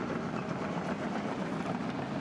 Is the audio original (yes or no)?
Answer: yes